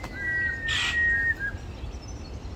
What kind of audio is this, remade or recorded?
recorded